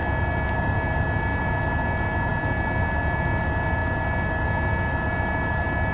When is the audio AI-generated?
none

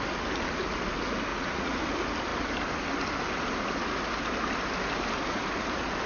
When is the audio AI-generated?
1.3-1.8 (vocoder, Vocos)